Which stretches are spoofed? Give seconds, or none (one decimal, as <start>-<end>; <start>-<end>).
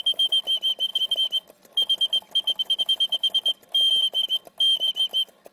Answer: none